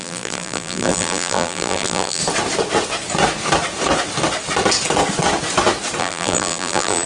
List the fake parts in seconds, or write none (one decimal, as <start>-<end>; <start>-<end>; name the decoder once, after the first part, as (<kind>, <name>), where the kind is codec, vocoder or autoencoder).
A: 0.0-2.2 (vocoder, BigVGAN v2); 6.0-7.1